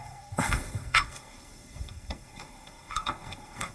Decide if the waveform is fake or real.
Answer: fake